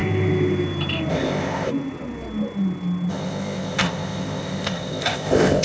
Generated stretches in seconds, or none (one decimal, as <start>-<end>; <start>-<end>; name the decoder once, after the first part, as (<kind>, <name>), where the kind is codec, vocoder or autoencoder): 1.1-1.7 (codec, ZipCodec); 3.1-5.6